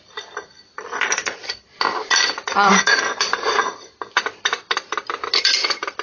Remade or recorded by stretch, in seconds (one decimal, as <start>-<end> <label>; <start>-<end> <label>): 0.0-1.7 recorded; 1.7-4.4 remade; 4.4-6.0 recorded